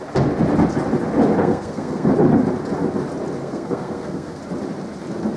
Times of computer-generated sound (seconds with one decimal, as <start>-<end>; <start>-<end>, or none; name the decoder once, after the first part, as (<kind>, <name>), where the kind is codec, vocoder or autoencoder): 1.4-2.1 (codec, SNAC); 3.4-4.4